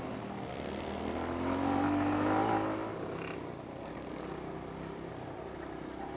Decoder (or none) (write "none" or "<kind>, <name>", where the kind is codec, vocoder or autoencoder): none